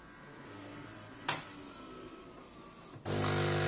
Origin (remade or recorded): recorded